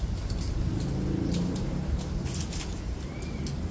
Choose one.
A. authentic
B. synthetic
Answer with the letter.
A